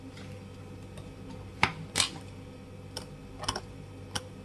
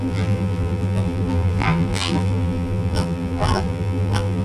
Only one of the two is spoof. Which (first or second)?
second